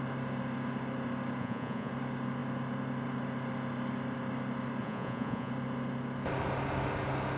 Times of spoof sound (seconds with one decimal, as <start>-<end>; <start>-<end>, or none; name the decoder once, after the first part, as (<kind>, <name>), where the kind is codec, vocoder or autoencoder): 1.4-1.9 (vocoder, Vocos); 4.8-5.5